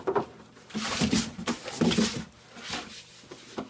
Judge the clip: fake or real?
real